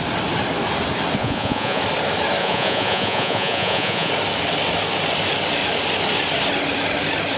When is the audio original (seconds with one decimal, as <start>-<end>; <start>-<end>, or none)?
0.0-1.2; 1.8-2.4; 4.1-7.4